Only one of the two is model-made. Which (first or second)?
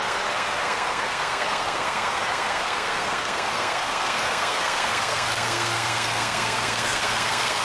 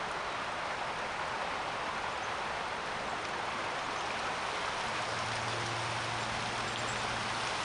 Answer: first